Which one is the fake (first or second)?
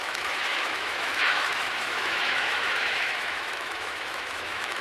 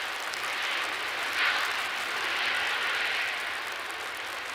first